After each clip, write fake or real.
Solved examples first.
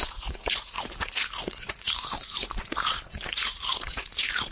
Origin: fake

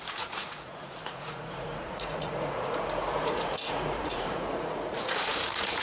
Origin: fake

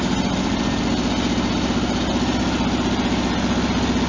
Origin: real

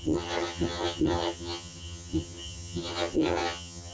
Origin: fake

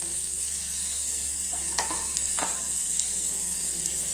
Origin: fake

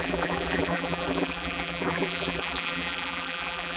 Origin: fake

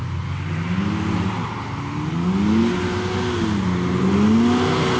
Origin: real